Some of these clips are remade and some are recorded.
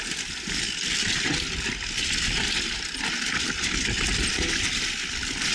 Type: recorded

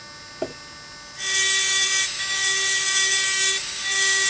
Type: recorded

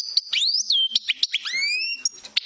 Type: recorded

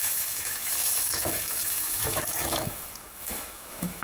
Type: remade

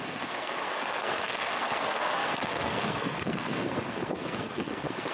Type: remade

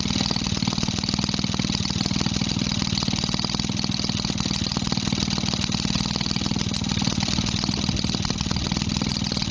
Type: recorded